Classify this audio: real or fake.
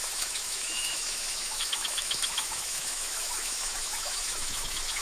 fake